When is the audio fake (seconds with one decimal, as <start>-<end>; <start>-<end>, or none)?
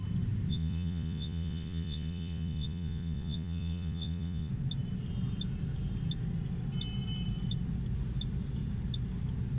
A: 0.5-4.5